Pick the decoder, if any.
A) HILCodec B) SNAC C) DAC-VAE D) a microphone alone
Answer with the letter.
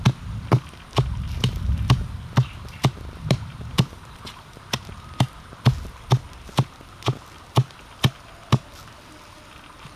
D